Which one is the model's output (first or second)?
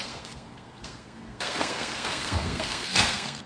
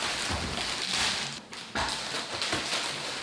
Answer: first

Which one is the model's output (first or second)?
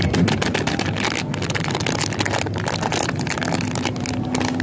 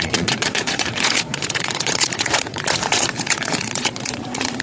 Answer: second